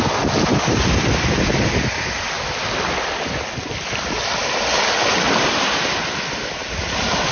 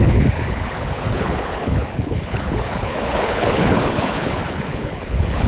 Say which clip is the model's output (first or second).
second